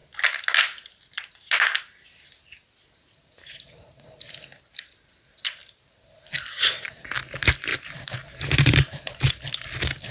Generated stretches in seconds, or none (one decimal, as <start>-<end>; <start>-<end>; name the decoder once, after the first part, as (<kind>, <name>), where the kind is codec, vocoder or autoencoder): 7.7-9.3 (vocoder, BigVGAN v2)